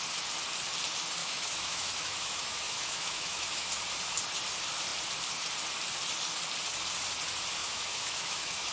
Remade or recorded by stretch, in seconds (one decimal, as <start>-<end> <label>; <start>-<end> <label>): 0.0-1.2 recorded; 1.2-3.7 remade; 3.7-7.6 recorded; 7.6-8.7 remade